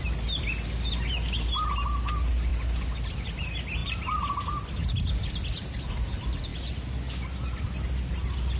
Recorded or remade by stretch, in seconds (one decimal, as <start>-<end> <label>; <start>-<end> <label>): 0.0-8.6 recorded